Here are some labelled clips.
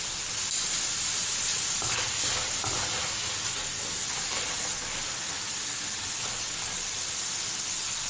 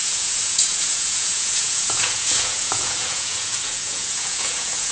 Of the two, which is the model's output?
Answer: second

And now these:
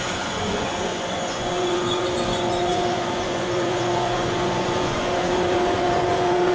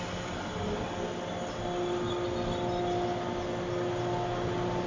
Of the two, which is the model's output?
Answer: first